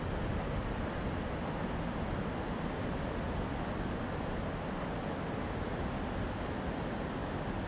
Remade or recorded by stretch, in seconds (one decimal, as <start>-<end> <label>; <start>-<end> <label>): 0.0-7.7 recorded